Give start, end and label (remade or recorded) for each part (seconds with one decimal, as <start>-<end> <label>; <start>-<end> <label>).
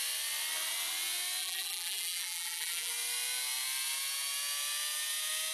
0.0-1.4 recorded; 1.4-2.9 remade; 2.9-5.5 recorded